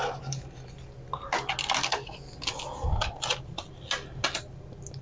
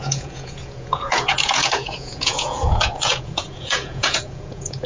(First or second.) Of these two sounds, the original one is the first